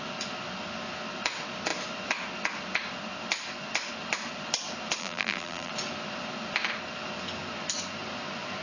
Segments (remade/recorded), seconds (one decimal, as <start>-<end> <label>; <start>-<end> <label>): 0.0-5.0 recorded; 5.0-5.7 remade; 5.7-8.6 recorded